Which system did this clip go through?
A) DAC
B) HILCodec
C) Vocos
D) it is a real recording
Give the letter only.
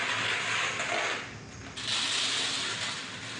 D